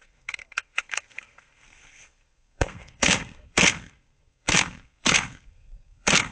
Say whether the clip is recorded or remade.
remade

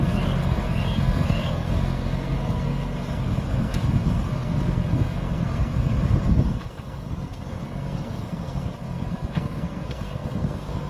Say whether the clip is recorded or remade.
remade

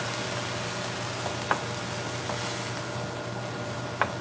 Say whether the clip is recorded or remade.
recorded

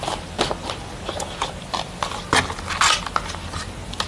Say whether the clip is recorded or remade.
recorded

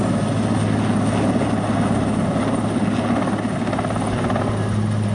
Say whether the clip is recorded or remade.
recorded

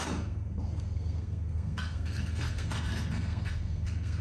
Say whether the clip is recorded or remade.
remade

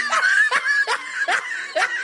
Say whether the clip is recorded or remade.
recorded